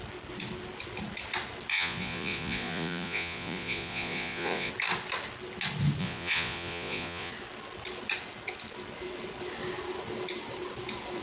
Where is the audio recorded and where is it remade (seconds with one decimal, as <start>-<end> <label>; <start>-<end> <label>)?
0.0-1.7 recorded; 1.7-4.7 remade; 4.7-6.0 recorded; 6.0-7.3 remade; 7.3-11.2 recorded